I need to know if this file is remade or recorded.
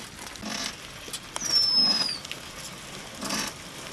recorded